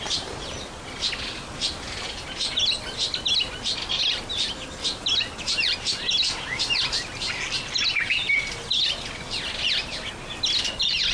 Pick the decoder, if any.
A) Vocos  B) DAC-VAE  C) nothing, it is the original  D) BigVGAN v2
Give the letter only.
C